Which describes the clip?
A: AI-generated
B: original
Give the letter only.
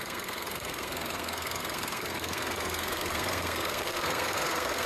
A